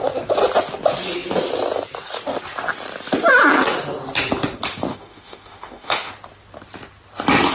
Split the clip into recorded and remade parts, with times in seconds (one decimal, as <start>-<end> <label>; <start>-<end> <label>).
0.0-4.9 recorded; 4.9-6.1 remade; 6.1-7.5 recorded